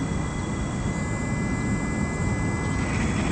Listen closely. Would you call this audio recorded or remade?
recorded